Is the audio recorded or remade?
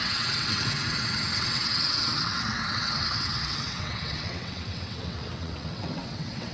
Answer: remade